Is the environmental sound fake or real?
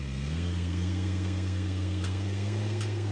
fake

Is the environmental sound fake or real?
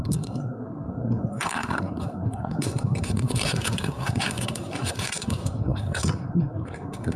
fake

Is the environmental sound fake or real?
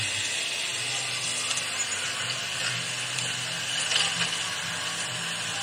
real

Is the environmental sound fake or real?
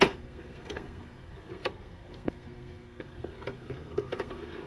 fake